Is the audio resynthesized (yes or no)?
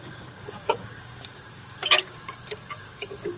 yes